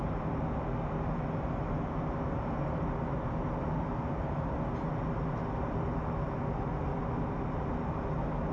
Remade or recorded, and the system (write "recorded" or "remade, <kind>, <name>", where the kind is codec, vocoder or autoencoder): recorded